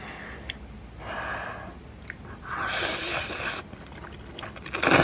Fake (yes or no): no